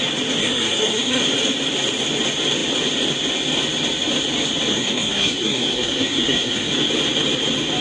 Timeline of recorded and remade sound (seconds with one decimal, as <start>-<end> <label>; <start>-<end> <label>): 0.0-0.4 recorded; 0.4-1.2 remade; 1.2-4.7 recorded; 4.7-6.7 remade; 6.7-7.8 recorded